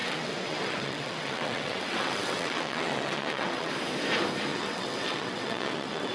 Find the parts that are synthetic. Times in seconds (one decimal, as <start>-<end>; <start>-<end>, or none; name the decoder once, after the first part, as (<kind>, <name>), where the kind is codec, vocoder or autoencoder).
0.0-3.7 (vocoder, WaveNeXt); 4.5-6.1